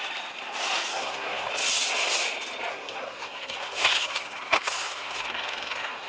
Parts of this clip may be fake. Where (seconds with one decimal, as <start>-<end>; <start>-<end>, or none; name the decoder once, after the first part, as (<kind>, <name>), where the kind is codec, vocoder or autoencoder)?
0.9-1.5 (codec, SNAC); 2.7-6.1